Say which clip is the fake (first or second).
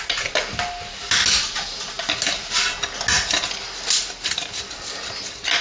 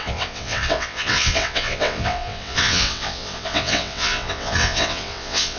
second